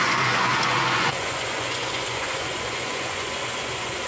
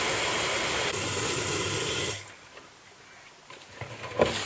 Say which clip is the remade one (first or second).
first